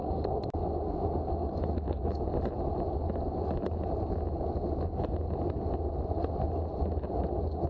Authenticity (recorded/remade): recorded